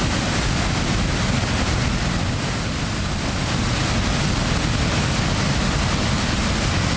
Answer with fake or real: real